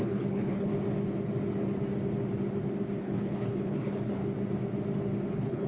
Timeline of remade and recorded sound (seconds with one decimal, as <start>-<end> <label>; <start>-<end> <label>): 0.0-0.7 remade; 0.7-3.0 recorded; 3.0-4.2 remade; 4.2-5.3 recorded; 5.3-5.7 remade